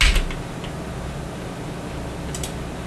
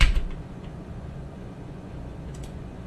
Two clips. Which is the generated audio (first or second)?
second